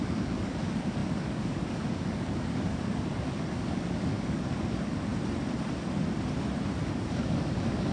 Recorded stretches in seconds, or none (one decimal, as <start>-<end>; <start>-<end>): 5.1-6.9